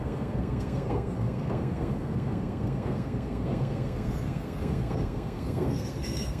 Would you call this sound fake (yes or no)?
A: yes